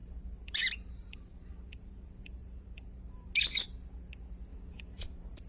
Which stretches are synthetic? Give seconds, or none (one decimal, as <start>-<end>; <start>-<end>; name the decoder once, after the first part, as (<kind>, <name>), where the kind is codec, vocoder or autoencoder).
0.0-3.3 (vocoder, BigVGAN v2); 4.5-5.5